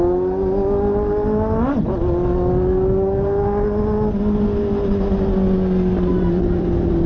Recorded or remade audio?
recorded